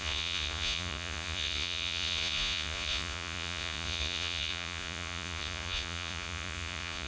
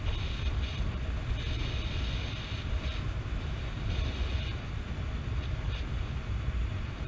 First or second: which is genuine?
second